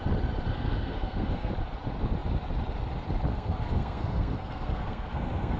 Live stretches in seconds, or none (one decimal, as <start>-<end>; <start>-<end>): 0.0-0.5; 1.5-3.3

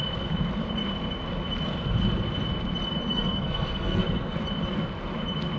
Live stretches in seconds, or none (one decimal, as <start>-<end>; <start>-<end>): 0.0-3.1; 4.4-5.6

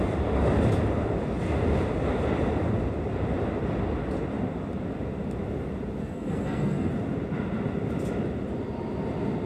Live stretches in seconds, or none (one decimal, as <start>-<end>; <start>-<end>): 0.0-6.0; 6.9-9.5

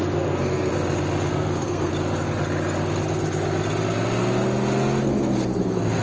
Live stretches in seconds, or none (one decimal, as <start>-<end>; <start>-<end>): 0.7-1.3; 1.9-5.0

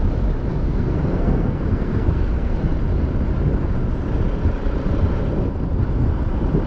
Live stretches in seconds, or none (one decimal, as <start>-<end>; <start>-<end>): 0.0-0.5; 2.6-6.7